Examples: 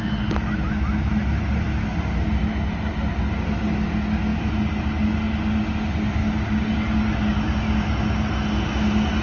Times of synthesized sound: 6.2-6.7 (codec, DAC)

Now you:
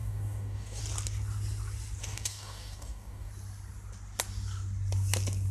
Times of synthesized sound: 0.0-0.8 (codec, DAC); 2.0-3.3